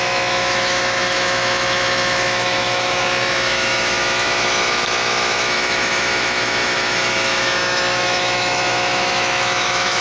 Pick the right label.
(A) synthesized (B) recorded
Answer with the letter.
A